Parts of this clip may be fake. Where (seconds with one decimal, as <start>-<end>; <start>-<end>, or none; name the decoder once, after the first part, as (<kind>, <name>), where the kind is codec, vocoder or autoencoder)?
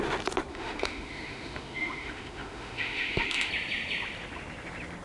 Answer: 0.5-3.5 (autoencoder, DAC-VAE)